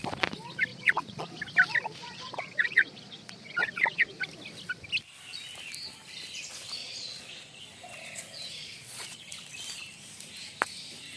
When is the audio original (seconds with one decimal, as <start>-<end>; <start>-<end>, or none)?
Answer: 0.0-0.7; 1.4-2.0; 4.2-6.8; 7.6-8.6; 9.2-11.2